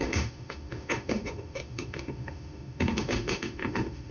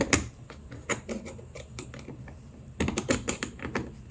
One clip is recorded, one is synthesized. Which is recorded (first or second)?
second